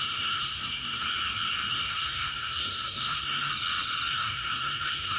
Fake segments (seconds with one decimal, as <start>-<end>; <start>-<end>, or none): 0.0-1.1; 1.7-3.5; 4.1-5.2